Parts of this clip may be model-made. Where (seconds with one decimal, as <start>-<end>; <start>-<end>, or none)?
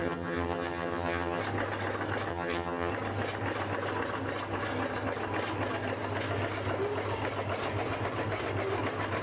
0.0-1.4; 2.3-2.9